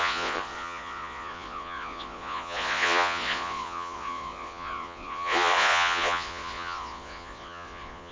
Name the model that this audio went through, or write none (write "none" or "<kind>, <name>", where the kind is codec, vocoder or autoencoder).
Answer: vocoder, Vocos